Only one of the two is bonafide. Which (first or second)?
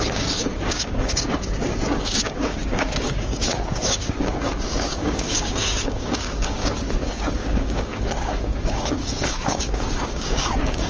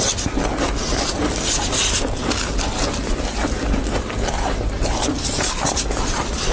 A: second